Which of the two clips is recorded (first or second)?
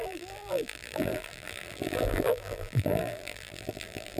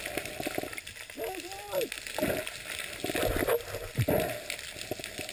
second